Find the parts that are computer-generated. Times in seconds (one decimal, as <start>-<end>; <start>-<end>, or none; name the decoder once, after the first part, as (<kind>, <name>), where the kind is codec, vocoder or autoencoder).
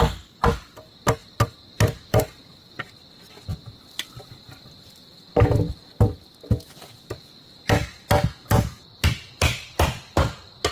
1.2-2.4 (vocoder, BigVGAN v2)